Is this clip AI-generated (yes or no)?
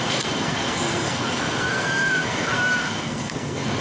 yes